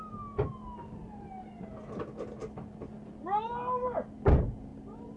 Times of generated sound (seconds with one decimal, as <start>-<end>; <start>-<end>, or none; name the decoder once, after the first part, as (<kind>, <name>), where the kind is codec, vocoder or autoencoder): 1.0-1.7 (vocoder, BigVGAN v2); 4.7-5.2